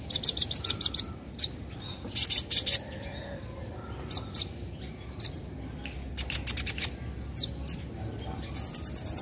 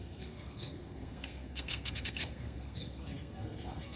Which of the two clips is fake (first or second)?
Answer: second